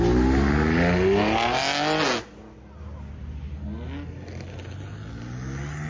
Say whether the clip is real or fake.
real